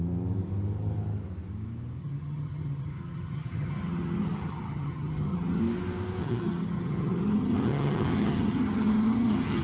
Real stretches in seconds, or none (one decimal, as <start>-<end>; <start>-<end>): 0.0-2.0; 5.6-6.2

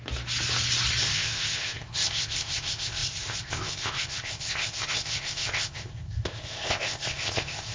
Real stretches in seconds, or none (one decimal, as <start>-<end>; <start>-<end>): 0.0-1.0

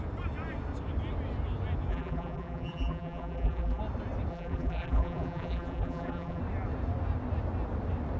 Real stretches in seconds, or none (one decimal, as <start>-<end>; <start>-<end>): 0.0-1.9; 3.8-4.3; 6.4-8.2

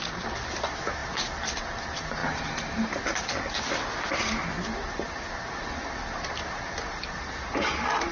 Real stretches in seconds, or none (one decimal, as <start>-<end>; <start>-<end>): 0.0-8.1